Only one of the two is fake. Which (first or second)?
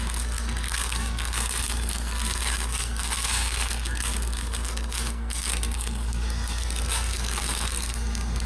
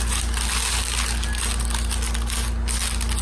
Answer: first